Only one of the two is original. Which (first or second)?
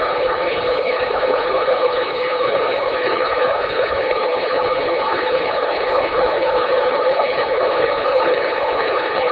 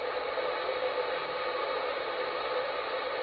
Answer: second